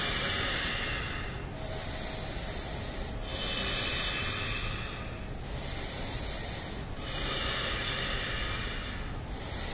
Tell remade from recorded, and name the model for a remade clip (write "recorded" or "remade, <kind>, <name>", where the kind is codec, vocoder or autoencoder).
recorded